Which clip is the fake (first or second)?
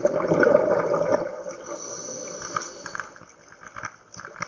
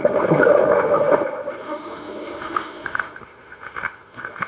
second